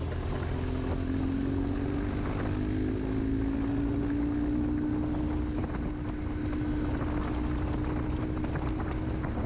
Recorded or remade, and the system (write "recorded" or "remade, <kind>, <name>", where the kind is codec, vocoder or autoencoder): recorded